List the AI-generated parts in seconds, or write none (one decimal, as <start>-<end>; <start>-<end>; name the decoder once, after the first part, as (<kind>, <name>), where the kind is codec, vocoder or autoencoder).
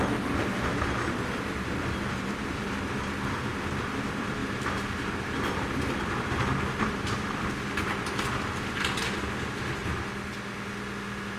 none